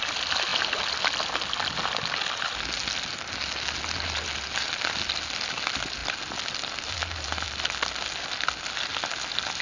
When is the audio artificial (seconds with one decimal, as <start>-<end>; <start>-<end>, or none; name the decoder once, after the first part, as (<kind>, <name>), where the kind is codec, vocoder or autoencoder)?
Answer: none